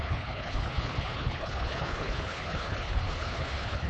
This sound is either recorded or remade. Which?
remade